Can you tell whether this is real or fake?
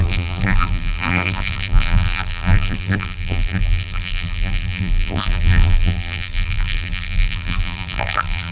fake